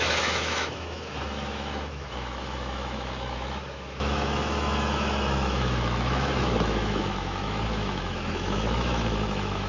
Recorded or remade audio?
remade